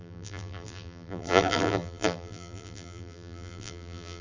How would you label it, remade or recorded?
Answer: remade